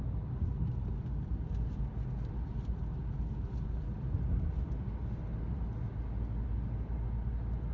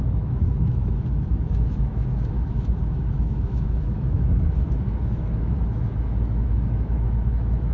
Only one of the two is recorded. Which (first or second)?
first